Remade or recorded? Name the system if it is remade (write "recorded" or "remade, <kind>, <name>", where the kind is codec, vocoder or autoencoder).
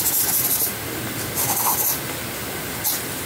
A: recorded